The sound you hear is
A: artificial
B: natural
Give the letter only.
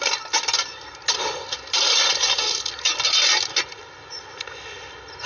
B